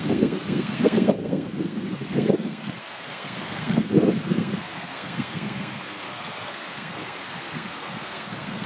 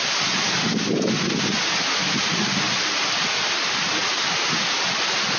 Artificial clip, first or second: first